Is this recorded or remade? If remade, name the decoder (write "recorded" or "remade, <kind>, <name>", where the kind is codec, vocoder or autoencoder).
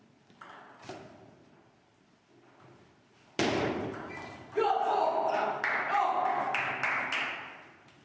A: recorded